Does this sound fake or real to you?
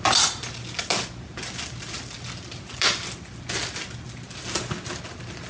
real